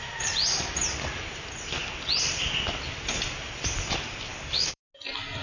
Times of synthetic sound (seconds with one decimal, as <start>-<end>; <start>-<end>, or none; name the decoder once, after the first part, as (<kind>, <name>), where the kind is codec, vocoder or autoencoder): 4.3-4.8 (codec, DAC)